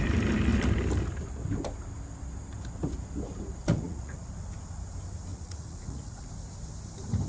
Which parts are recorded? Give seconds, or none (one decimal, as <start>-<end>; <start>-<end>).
0.0-3.6; 4.3-5.3; 6.3-7.3